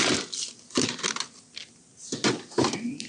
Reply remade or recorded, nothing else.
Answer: recorded